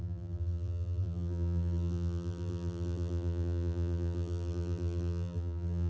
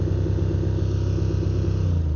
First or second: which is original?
second